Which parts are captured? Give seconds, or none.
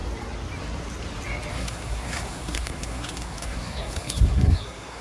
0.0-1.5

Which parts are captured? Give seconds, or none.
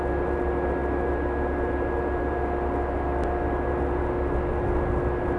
0.0-5.4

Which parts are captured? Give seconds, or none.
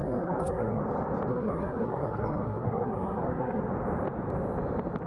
0.8-1.3; 3.6-5.1